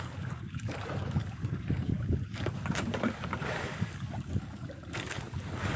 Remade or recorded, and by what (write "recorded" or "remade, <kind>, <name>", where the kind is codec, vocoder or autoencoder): remade, codec, DAC